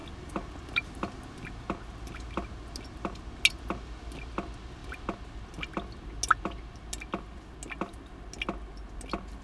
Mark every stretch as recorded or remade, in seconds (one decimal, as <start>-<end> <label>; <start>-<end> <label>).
0.0-9.4 recorded